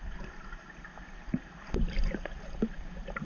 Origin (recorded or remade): remade